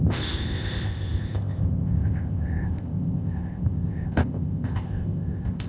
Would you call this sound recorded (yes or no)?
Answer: no